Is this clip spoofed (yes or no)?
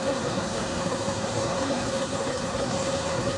yes